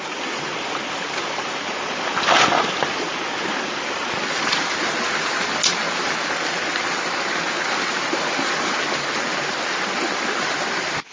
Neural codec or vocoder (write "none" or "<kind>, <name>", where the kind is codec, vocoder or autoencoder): none